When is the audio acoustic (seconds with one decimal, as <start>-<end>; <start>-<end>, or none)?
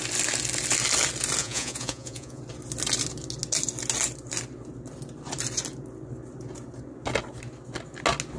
0.0-1.4; 2.4-8.4